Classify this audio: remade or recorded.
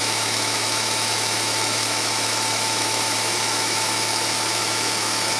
remade